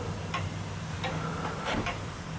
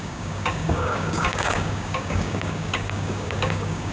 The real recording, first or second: first